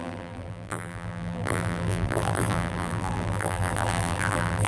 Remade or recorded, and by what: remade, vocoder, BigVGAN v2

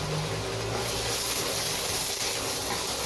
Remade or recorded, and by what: recorded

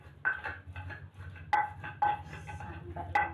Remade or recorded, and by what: recorded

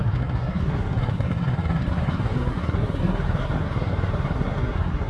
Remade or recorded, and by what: remade, codec, SNAC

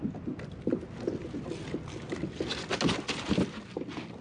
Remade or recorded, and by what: recorded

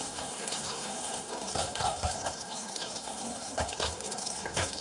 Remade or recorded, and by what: remade, codec, SNAC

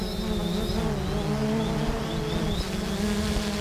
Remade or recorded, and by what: recorded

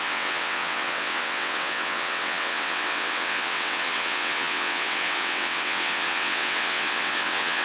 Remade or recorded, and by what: remade, vocoder, WaveNeXt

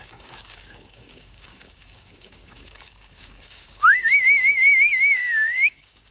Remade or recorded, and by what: remade, codec, DAC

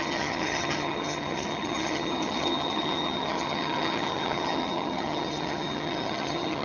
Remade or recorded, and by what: remade, vocoder, HiFi-GAN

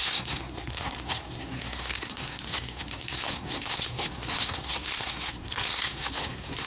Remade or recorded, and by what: remade, codec, SNAC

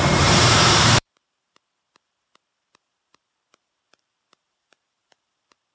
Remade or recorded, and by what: remade, vocoder, BigVGAN v2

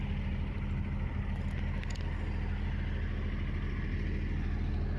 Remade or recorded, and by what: recorded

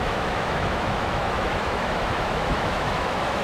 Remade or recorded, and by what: remade, autoencoder, DAC-VAE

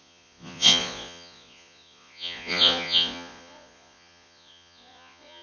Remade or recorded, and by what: remade, vocoder, Vocos